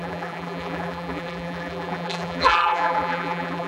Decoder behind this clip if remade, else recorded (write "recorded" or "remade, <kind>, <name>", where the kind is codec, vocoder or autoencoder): remade, vocoder, BigVGAN v2